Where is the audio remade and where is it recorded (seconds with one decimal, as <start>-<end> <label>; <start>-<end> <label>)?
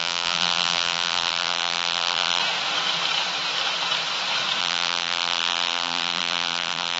0.0-2.4 remade; 2.4-4.6 recorded; 4.6-7.0 remade